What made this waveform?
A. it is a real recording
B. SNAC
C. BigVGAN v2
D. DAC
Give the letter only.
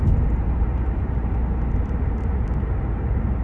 C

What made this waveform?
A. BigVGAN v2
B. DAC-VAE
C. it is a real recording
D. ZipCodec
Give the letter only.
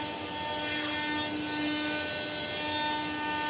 C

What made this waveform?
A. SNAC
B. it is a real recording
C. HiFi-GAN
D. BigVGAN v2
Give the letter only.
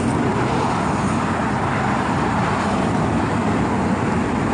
B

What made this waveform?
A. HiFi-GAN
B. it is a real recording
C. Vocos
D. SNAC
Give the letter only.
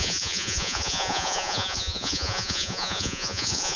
C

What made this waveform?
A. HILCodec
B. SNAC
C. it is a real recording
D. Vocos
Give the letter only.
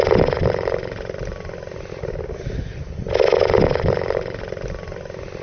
C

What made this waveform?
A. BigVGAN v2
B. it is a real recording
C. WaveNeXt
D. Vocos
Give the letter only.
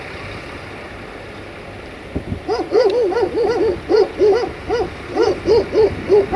B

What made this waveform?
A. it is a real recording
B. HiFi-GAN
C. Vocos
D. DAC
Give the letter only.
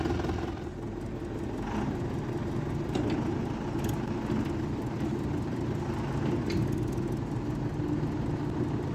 A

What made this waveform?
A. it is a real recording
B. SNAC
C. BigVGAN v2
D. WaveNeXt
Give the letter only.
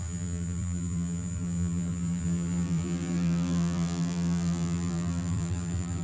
C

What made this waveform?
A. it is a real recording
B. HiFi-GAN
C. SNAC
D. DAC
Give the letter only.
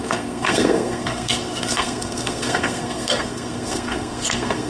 C